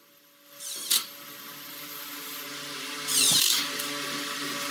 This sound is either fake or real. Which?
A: real